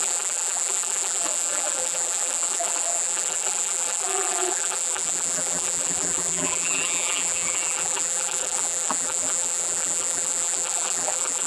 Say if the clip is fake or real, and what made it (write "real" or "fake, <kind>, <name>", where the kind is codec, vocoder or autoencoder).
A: fake, vocoder, BigVGAN v2